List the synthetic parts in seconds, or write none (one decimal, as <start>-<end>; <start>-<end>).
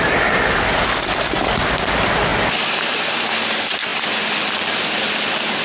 none